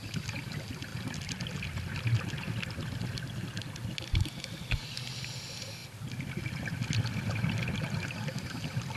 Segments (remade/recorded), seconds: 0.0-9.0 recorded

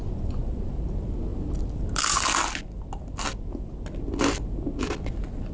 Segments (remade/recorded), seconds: 0.0-0.5 remade; 0.5-5.5 recorded

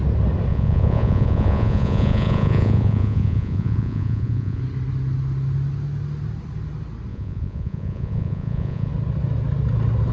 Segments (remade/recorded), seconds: 0.0-0.5 recorded; 0.5-4.6 remade; 4.6-7.1 recorded; 7.1-8.9 remade; 8.9-10.1 recorded

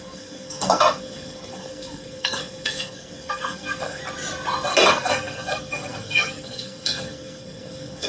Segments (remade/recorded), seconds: 0.0-4.0 remade; 4.0-4.9 recorded; 4.9-8.1 remade

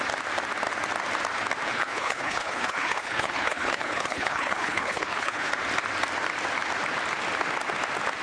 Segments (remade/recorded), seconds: 0.0-1.7 recorded; 1.7-5.5 remade; 5.5-8.2 recorded